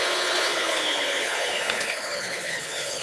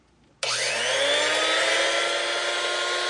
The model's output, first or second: first